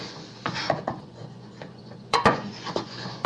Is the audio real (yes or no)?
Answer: no